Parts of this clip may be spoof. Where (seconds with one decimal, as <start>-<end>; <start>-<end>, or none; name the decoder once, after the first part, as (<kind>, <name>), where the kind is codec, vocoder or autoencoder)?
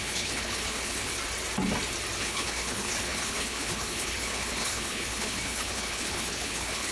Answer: 0.0-1.1 (codec, HILCodec); 2.2-6.9